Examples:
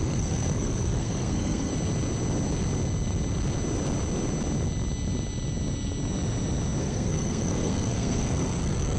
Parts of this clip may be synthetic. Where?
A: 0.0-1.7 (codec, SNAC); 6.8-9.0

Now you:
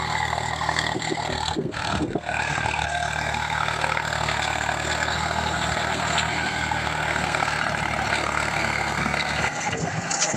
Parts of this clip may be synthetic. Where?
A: 0.0-7.6 (codec, SNAC); 8.1-10.4